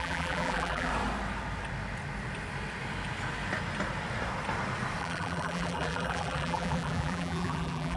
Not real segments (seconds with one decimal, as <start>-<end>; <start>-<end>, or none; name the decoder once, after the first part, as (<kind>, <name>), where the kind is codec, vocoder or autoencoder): 0.0-0.9 (vocoder, BigVGAN v2); 5.0-8.0